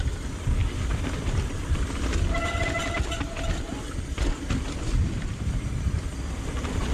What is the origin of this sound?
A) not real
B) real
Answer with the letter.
B